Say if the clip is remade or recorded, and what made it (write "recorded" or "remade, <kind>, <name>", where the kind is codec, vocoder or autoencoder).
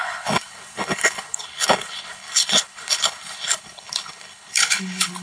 remade, codec, HILCodec